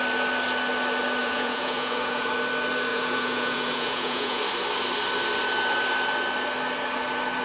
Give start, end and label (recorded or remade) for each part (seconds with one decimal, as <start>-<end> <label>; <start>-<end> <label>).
0.0-1.2 recorded; 1.2-2.3 remade; 2.3-2.9 recorded; 2.9-4.4 remade; 4.4-7.4 recorded